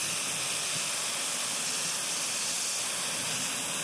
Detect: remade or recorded recorded